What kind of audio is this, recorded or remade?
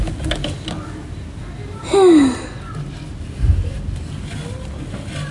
recorded